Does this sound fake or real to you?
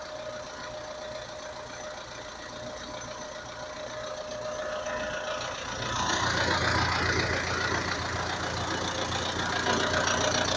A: real